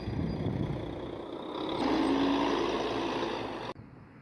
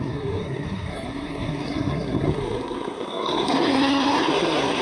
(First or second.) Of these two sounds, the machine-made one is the second